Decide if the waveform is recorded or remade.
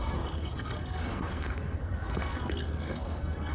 remade